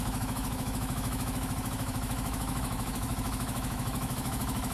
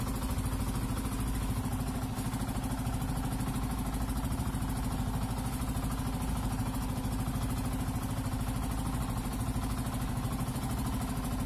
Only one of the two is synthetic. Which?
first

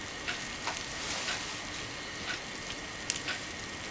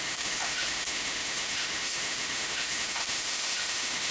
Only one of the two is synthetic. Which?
second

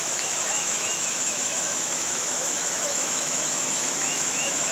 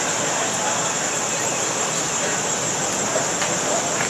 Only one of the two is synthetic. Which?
first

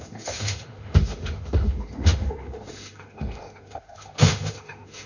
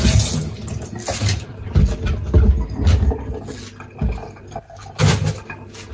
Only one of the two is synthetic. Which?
first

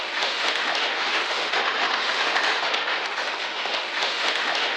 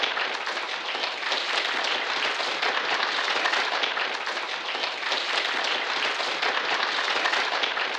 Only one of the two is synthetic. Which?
first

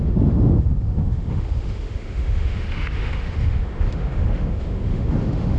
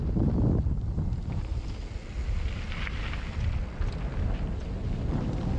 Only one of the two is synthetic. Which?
first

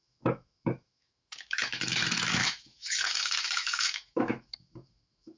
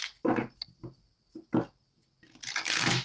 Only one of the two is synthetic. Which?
first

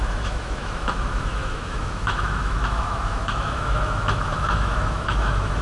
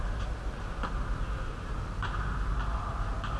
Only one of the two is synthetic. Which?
first